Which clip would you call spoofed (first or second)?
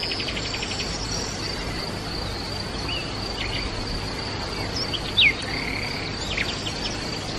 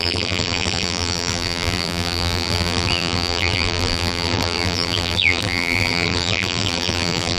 second